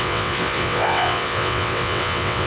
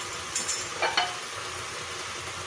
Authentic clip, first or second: second